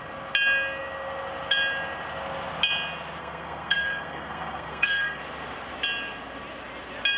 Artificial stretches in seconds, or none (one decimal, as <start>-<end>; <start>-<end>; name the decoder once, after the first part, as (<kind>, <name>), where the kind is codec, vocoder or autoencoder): 3.2-5.2 (codec, SNAC)

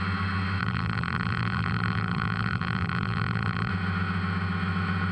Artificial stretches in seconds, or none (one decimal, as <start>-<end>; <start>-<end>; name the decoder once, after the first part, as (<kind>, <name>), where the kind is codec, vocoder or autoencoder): 0.6-3.7 (vocoder, BigVGAN v2)